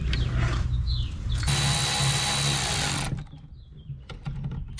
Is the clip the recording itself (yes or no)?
yes